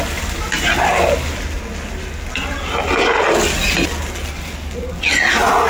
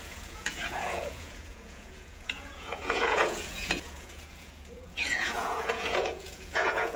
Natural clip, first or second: first